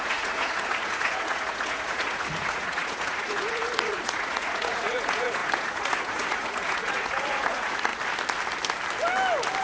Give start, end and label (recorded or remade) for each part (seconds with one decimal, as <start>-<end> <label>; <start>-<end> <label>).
0.0-7.9 remade; 7.9-9.6 recorded